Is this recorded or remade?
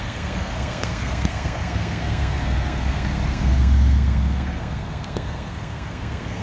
remade